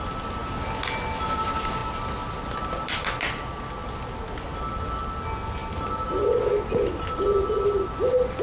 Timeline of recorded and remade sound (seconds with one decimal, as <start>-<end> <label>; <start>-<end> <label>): 0.0-8.4 recorded